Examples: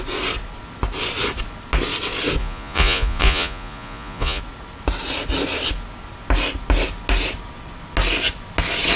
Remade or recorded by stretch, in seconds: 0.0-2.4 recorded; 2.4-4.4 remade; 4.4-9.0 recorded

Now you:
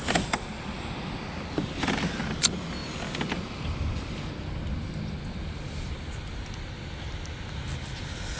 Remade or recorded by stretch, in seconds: 0.0-8.4 recorded

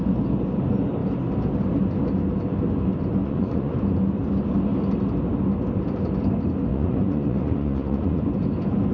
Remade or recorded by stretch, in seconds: 0.0-3.2 recorded; 3.2-3.7 remade; 3.7-6.7 recorded; 6.7-8.2 remade; 8.2-8.9 recorded